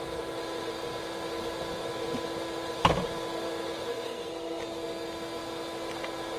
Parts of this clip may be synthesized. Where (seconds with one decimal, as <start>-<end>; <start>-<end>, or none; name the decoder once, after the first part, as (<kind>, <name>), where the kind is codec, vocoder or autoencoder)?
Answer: 3.9-4.6 (codec, SNAC)